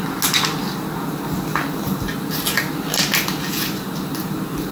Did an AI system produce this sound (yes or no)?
no